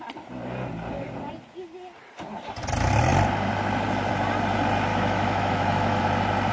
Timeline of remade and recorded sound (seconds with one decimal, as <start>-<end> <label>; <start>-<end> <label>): 0.0-4.9 recorded; 4.9-6.0 remade; 6.0-6.5 recorded